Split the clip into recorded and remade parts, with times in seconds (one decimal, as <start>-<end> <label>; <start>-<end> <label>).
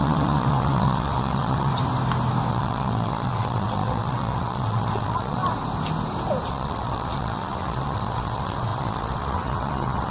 0.0-1.7 remade; 1.7-2.5 recorded; 2.5-5.4 remade; 5.4-6.5 recorded; 6.5-10.1 remade